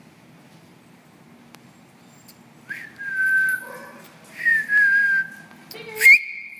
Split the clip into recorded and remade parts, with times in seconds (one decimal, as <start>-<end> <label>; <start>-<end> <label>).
0.0-6.6 recorded